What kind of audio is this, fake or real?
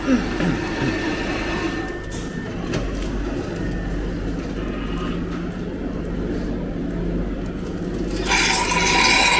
real